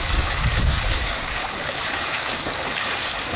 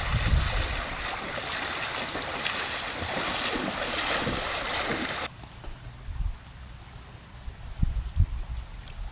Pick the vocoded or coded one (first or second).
first